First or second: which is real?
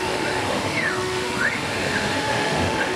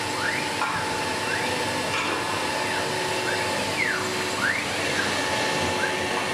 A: second